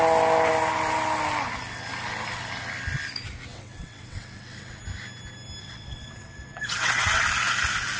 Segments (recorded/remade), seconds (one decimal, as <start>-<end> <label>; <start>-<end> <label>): 0.0-3.5 recorded; 3.5-4.8 remade; 4.8-5.6 recorded; 5.6-7.2 remade; 7.2-8.0 recorded